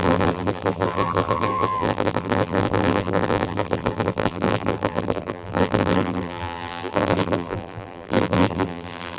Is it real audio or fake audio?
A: fake